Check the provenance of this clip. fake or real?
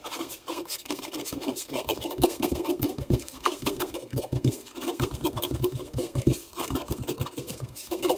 fake